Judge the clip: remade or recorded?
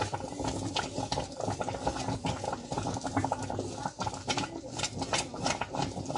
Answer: recorded